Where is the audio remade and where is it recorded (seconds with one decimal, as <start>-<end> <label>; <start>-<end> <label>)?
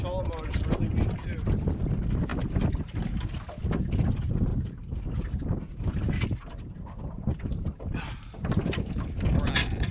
0.0-4.5 recorded; 4.5-8.1 remade; 8.1-9.9 recorded